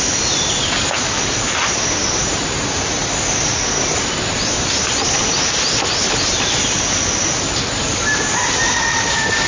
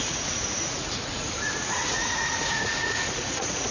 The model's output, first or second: second